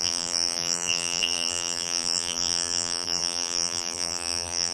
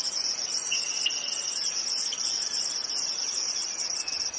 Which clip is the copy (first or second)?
first